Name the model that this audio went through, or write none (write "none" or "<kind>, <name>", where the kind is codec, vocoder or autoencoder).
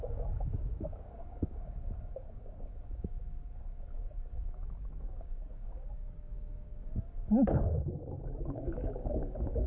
codec, DAC